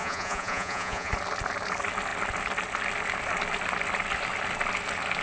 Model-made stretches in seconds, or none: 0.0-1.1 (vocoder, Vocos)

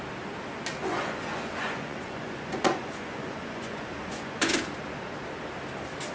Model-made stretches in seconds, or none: 0.8-4.5 (vocoder, Vocos)

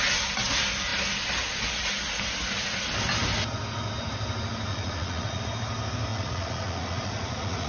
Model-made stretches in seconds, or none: 4.7-5.4 (vocoder, Vocos); 6.1-7.7

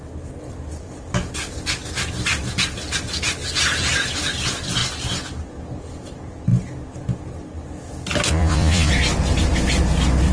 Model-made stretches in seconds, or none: 8.3-8.9 (vocoder, Vocos)

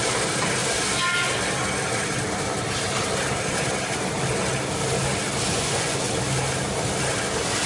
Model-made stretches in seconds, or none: 5.5-6.1 (vocoder, Vocos)

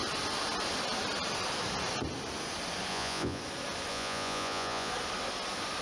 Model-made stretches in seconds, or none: 2.9-3.4 (vocoder, Vocos); 3.9-4.9

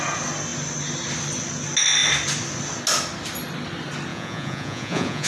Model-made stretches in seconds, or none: 4.1-5.3 (vocoder, Vocos)